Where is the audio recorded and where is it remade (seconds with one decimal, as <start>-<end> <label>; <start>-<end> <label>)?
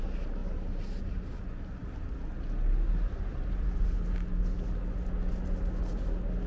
0.0-6.5 recorded